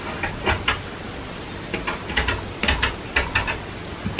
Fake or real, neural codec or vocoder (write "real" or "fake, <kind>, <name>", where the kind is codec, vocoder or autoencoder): real